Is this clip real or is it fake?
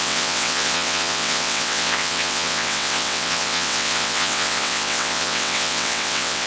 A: fake